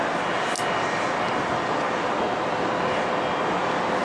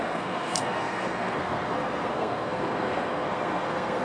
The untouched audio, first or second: first